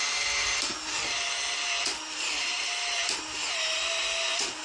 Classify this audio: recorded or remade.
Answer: recorded